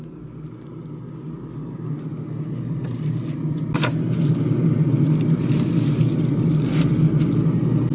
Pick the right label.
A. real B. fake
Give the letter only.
A